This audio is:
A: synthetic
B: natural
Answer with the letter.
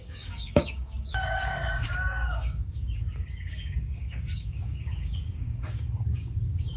A